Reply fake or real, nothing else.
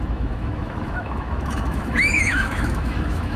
fake